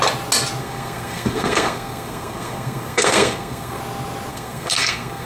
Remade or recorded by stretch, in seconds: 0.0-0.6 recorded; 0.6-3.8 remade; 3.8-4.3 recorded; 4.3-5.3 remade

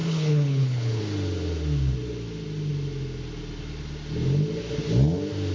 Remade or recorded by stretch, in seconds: 0.0-1.0 remade; 1.0-5.5 recorded